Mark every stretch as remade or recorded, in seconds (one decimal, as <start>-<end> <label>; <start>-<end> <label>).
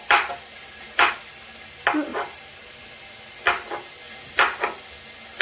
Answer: 0.0-1.1 remade; 1.1-2.1 recorded; 2.1-3.1 remade; 3.1-5.4 recorded